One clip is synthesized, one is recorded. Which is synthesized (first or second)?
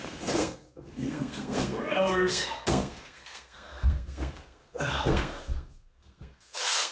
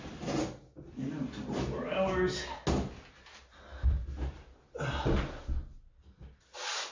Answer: first